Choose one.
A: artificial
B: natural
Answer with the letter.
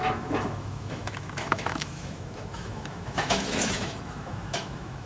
A